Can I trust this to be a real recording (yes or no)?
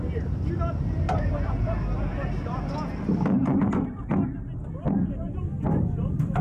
yes